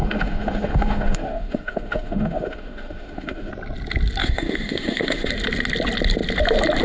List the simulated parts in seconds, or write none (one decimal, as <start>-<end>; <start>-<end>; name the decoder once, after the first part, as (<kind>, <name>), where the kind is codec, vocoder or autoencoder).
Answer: 0.0-3.5 (autoencoder, DAC-VAE); 4.2-5.3